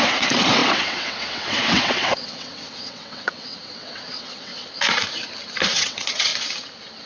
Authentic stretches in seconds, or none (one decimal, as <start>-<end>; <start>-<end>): 4.5-5.7; 6.3-7.1